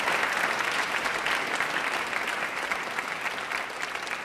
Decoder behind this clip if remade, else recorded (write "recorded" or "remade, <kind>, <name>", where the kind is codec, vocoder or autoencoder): recorded